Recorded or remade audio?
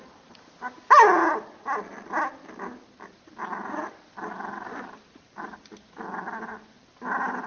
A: recorded